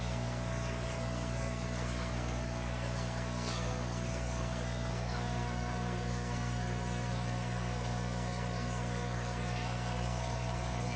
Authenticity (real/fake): fake